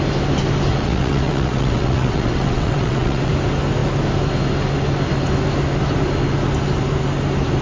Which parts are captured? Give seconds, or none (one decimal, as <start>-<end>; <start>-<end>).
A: 0.0-0.7; 3.3-7.6